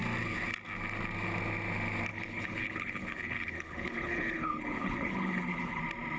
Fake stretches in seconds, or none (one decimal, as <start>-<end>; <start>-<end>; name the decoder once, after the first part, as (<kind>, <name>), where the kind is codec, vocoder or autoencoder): 2.1-5.8 (codec, HILCodec)